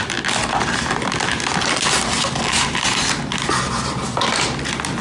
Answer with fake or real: real